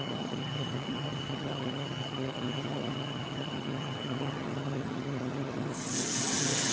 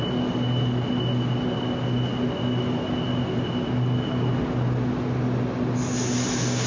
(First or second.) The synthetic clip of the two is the first